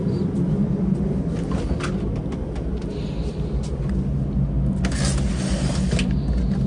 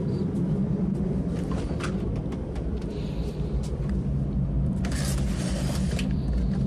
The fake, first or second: second